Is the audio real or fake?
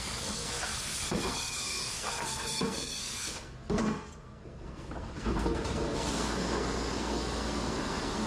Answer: fake